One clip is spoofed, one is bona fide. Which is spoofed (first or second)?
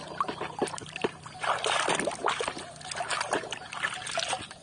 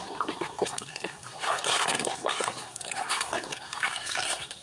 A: second